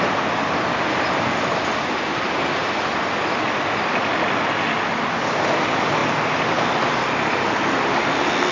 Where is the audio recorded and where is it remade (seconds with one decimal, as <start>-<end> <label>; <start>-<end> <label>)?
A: 0.0-8.5 recorded